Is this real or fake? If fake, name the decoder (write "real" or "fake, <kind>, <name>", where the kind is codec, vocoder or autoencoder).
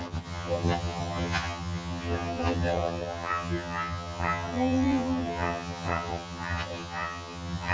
fake, vocoder, HiFi-GAN